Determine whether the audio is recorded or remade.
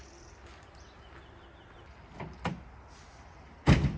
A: recorded